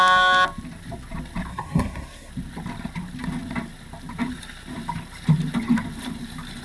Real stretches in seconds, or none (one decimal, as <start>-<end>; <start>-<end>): 0.0-1.5; 2.3-6.6